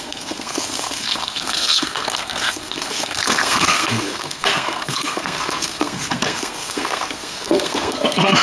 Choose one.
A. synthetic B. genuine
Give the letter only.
A